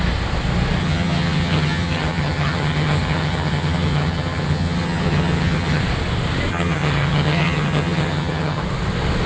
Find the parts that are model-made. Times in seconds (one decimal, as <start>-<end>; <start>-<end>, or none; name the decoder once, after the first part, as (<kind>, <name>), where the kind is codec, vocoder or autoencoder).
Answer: 0.8-5.8 (vocoder, HiFi-GAN); 6.5-8.6